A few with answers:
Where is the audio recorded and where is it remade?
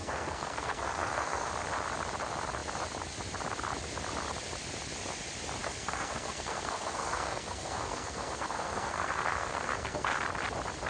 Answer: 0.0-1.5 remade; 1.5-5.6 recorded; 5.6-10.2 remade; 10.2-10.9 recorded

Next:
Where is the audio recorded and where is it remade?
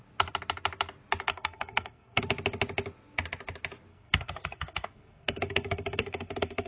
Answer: 0.0-1.3 recorded; 1.3-2.2 remade; 2.2-3.9 recorded; 3.9-6.7 remade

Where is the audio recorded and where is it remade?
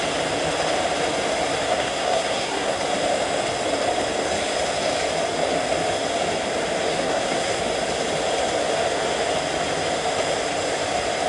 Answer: 0.0-1.7 recorded; 1.7-2.8 remade; 2.8-6.9 recorded; 6.9-7.6 remade; 7.6-11.3 recorded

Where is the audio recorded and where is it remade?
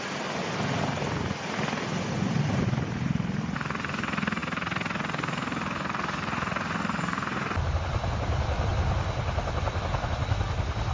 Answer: 0.0-10.9 recorded